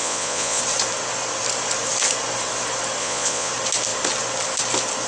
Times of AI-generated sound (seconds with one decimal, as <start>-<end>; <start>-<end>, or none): 0.0-0.6; 3.0-3.5